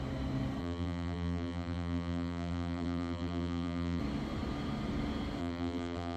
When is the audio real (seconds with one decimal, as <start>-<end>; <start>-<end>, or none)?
0.0-0.6; 4.0-5.4